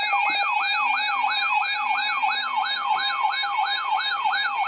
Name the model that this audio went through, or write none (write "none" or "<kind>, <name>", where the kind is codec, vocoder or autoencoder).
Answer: none